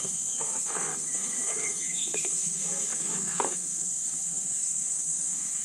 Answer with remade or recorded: remade